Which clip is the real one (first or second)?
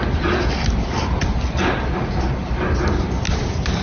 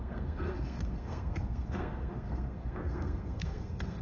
first